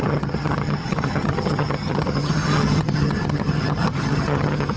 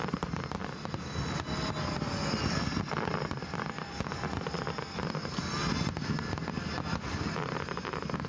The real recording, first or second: second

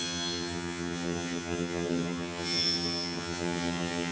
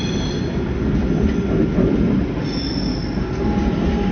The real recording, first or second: second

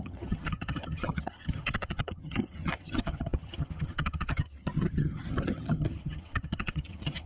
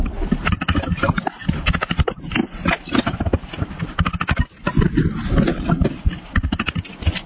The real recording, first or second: second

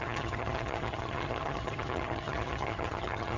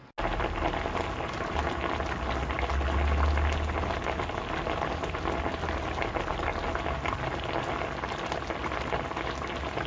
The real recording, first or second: second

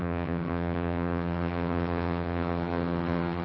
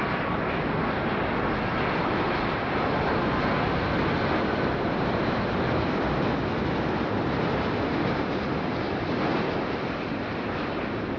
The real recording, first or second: second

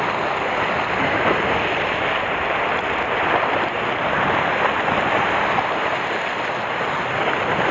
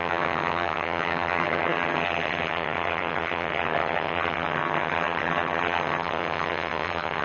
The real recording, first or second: first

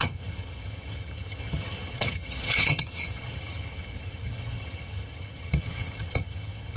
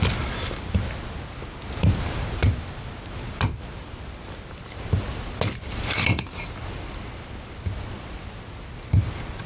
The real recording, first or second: second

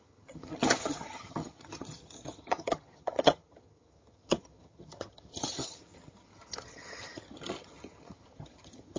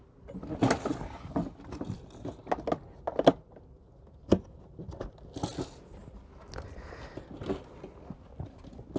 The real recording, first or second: second